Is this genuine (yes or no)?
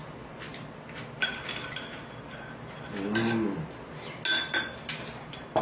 yes